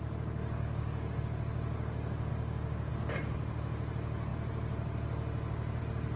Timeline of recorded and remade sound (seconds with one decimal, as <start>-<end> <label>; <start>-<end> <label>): 0.0-0.6 recorded; 0.6-1.2 remade; 1.2-2.3 recorded; 2.3-2.9 remade; 2.9-6.2 recorded